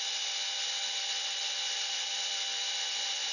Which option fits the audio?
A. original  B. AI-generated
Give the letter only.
A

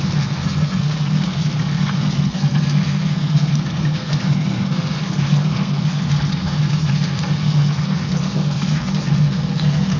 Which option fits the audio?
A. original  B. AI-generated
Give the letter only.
B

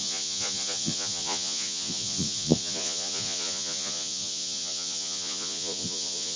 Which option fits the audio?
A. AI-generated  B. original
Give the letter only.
A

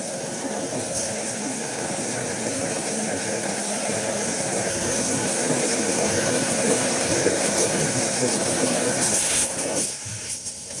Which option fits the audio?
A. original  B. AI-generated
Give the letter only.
B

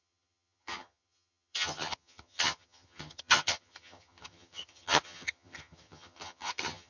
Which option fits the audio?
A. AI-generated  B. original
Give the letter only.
A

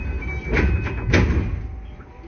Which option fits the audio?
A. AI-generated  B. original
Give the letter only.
B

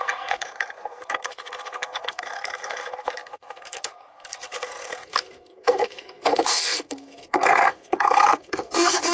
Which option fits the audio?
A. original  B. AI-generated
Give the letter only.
B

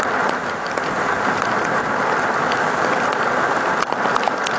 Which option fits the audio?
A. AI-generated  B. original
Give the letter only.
B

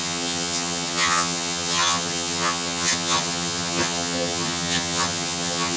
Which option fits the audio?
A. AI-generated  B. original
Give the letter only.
A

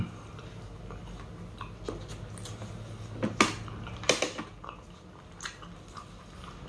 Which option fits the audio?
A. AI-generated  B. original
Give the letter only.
B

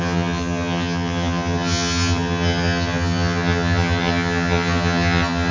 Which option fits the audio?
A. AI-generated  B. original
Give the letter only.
A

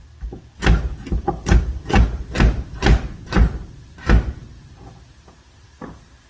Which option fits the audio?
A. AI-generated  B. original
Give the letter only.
B